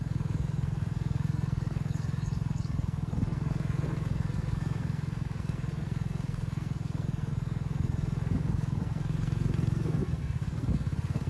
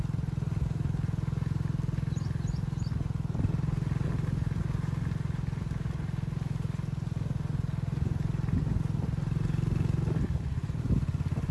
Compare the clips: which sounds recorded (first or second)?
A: second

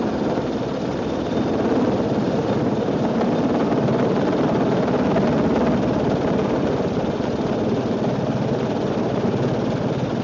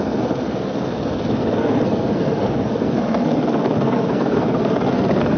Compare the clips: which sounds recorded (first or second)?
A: first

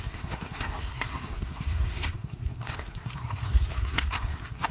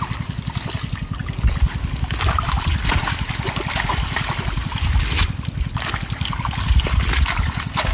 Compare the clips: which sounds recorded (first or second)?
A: second